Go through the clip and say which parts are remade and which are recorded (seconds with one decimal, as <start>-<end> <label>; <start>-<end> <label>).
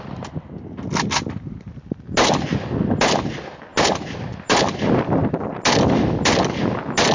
0.0-7.1 recorded